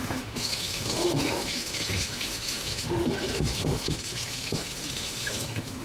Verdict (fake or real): fake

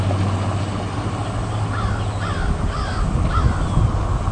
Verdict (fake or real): real